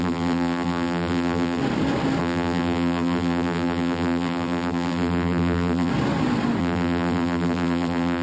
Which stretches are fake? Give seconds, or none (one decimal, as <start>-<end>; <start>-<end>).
0.0-1.6; 2.2-5.9; 6.6-8.2